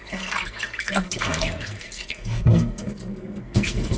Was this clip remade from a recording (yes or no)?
yes